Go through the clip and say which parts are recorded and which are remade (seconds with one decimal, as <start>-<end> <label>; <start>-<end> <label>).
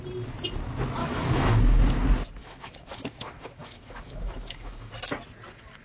0.0-1.0 recorded; 1.0-1.6 remade; 1.6-2.4 recorded; 2.4-4.9 remade; 4.9-5.8 recorded